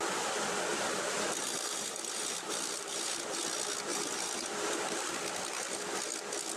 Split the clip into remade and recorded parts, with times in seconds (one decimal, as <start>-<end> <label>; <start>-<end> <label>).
0.0-0.7 recorded; 0.7-3.4 remade; 3.4-3.9 recorded; 3.9-5.1 remade; 5.1-6.6 recorded